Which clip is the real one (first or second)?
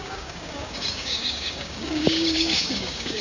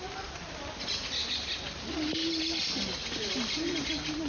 second